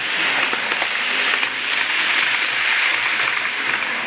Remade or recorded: recorded